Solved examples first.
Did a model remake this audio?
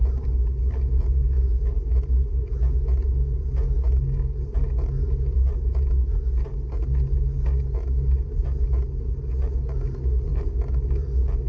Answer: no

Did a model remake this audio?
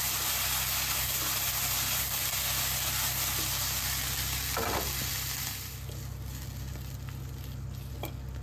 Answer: no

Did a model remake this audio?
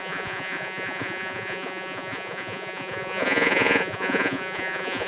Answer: yes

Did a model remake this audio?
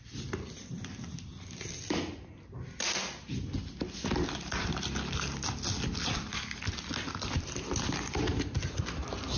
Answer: no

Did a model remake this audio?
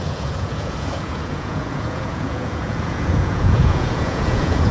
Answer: yes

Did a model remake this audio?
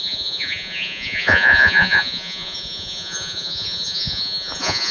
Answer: yes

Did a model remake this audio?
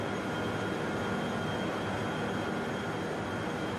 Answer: no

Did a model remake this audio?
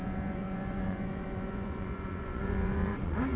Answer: yes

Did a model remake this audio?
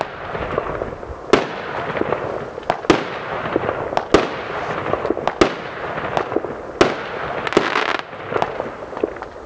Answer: no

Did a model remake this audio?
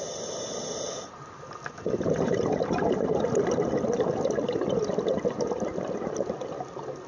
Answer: no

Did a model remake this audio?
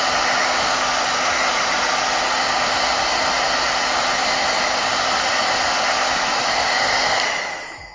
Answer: no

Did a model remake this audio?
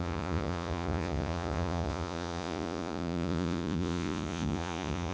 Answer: yes